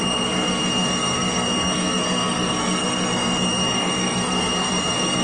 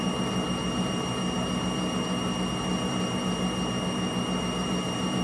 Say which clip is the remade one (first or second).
first